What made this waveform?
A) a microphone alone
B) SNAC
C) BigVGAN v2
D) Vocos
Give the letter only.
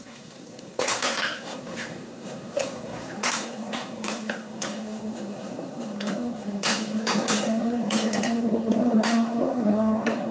B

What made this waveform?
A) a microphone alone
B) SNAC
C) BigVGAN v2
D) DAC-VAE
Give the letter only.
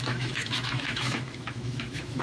D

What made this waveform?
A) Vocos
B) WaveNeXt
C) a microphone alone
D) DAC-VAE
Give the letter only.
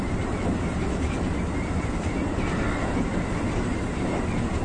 C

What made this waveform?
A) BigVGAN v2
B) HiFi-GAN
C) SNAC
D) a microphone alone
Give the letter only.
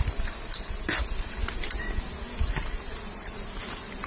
D